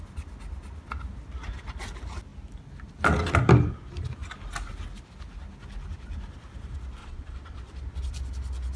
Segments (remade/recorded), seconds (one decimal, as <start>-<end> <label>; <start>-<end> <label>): 0.0-7.0 recorded; 7.0-7.8 remade; 7.8-8.8 recorded